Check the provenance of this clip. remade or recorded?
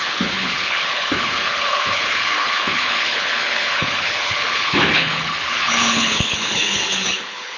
remade